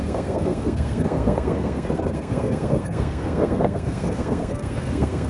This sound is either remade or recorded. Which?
remade